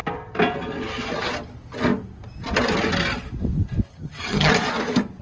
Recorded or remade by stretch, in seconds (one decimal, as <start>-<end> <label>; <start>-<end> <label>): 0.0-3.9 recorded; 3.9-4.5 remade; 4.5-5.2 recorded